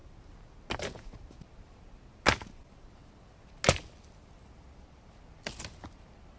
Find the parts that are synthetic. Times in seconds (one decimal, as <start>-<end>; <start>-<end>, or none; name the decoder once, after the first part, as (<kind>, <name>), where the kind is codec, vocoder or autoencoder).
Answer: none